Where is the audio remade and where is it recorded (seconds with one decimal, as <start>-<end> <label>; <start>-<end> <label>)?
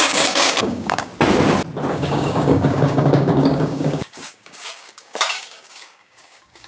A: 0.0-1.1 remade; 1.1-1.9 recorded; 1.9-6.7 remade